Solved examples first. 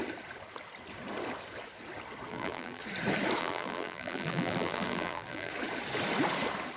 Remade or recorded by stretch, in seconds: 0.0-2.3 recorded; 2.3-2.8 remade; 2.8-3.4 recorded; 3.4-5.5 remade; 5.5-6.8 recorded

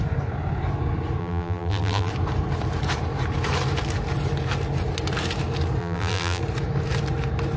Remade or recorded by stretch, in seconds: 0.0-1.2 recorded; 1.2-2.1 remade; 2.1-5.8 recorded; 5.8-6.4 remade; 6.4-7.6 recorded